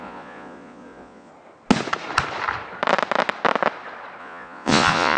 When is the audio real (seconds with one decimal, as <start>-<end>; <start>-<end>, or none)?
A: 1.3-4.2